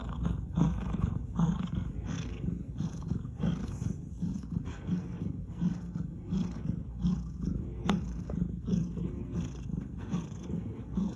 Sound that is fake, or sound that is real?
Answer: fake